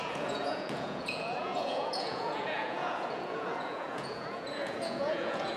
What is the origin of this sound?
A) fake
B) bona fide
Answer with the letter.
A